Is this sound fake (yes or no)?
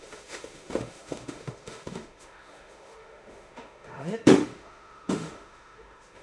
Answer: yes